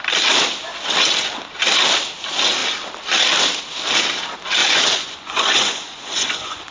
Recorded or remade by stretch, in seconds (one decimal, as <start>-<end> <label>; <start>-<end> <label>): 0.0-4.6 recorded; 4.6-6.7 remade